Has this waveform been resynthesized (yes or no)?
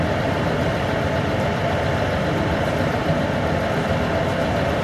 no